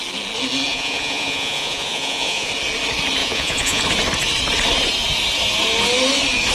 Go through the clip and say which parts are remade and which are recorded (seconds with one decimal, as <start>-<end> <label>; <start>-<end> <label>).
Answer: 0.0-0.7 recorded; 0.7-2.5 remade; 2.5-3.2 recorded; 3.2-3.8 remade; 3.8-6.5 recorded